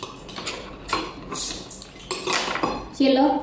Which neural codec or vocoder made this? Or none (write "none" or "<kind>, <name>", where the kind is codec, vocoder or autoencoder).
none